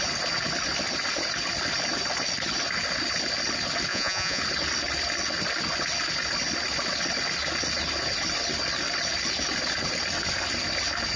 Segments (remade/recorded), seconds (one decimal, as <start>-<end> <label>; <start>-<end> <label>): 0.0-3.9 recorded; 3.9-4.4 remade; 4.4-11.2 recorded